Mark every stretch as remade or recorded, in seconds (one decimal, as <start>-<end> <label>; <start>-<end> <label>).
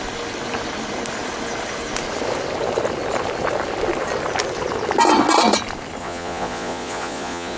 0.0-6.0 recorded; 6.0-7.6 remade